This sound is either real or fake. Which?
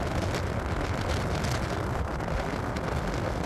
real